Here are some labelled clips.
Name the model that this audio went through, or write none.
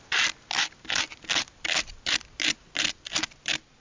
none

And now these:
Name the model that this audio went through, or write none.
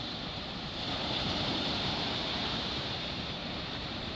vocoder, BigVGAN v2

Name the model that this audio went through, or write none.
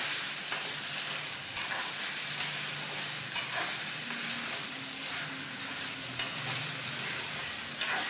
none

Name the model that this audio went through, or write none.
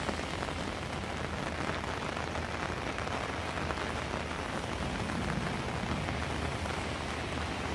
none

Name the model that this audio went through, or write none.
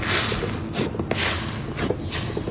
none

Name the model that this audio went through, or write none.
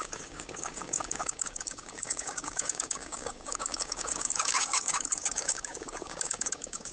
codec, DAC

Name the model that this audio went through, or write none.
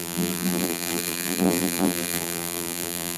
vocoder, BigVGAN v2